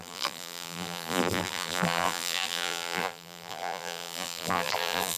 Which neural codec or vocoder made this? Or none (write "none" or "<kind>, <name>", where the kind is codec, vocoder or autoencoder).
vocoder, BigVGAN v2